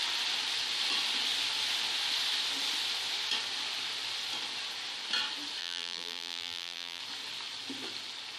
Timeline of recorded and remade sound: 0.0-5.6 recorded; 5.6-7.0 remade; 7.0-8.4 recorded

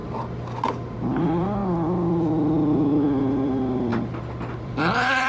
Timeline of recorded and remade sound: 0.0-1.2 recorded; 1.2-1.6 remade; 1.6-3.2 recorded; 3.2-3.9 remade; 3.9-4.6 recorded; 4.6-5.3 remade

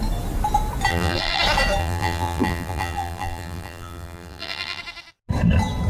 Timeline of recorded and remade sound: 0.0-0.9 recorded; 0.9-1.4 remade; 1.4-1.8 recorded; 1.8-4.8 remade; 4.8-5.9 recorded